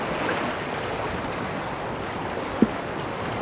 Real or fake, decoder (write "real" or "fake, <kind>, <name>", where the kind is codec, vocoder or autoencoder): real